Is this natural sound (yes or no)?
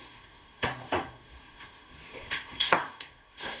no